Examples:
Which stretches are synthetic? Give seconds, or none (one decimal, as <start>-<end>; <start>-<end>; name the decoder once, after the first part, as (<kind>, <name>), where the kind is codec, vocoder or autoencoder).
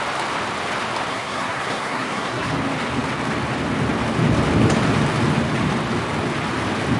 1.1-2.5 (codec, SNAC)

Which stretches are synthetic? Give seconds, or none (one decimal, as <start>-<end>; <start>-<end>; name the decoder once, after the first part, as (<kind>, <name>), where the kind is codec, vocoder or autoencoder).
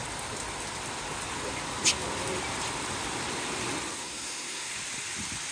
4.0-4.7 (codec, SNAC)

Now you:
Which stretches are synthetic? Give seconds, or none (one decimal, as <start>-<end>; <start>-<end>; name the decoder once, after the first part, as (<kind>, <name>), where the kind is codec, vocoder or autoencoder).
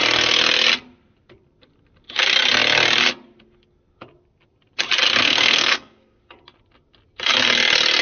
5.2-6.2 (codec, SNAC)